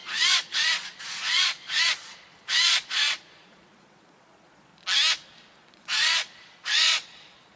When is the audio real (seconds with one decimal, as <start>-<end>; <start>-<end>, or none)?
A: 4.7-5.7